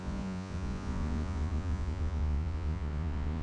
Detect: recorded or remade remade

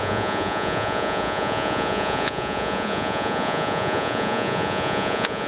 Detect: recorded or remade remade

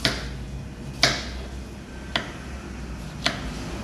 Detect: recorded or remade recorded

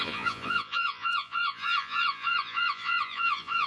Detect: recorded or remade remade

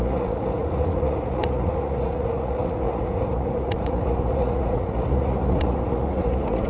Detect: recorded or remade remade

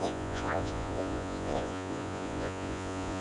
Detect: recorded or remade remade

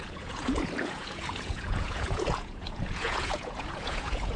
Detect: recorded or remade remade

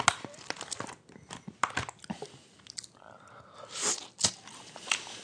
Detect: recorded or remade recorded